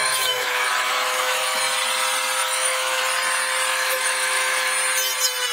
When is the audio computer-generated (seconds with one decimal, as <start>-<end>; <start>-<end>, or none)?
0.0-1.6; 2.4-3.0; 3.7-4.7